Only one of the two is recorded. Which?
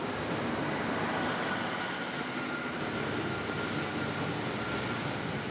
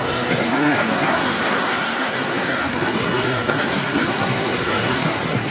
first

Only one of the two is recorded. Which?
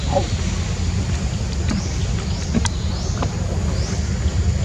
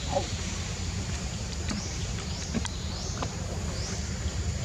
first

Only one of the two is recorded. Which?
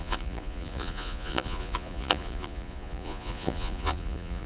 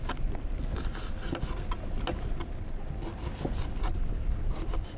second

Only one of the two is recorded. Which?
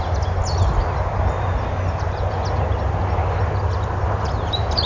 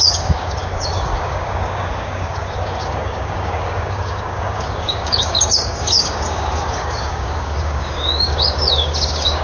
first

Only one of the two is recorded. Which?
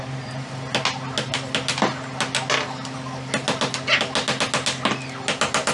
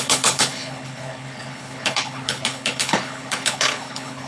first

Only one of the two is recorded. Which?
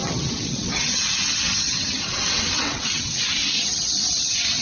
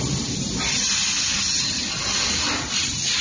second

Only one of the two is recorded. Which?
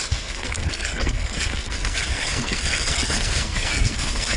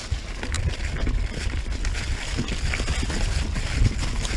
second